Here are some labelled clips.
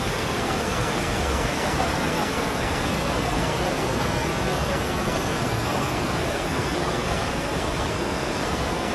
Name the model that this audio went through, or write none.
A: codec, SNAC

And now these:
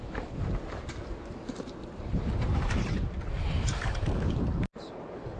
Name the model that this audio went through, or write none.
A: vocoder, BigVGAN v2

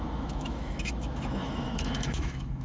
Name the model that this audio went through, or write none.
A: autoencoder, DAC-VAE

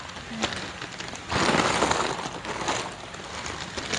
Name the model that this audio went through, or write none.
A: none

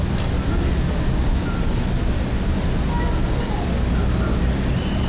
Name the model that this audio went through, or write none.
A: none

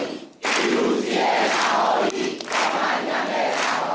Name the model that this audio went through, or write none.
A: none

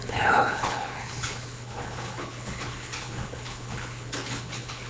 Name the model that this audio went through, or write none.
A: codec, HILCodec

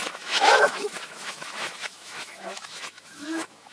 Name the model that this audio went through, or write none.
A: autoencoder, DAC-VAE